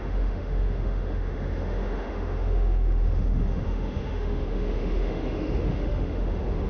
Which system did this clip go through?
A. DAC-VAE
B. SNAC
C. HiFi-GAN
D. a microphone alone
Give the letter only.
A